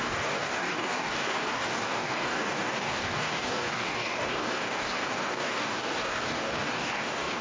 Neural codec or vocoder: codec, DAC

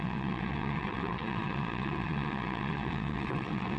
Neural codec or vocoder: vocoder, WaveNeXt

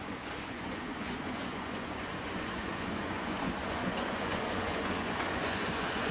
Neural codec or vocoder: vocoder, Vocos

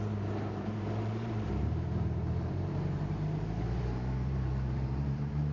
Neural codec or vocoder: vocoder, BigVGAN v2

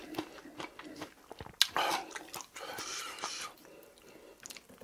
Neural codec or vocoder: none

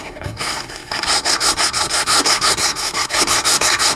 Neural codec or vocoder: codec, SNAC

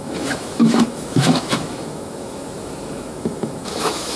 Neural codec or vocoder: autoencoder, DAC-VAE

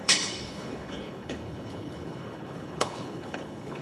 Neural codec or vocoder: codec, HILCodec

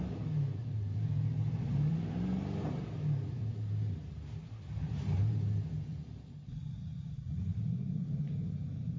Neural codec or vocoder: vocoder, BigVGAN v2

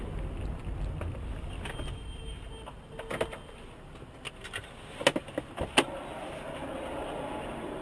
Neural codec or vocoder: none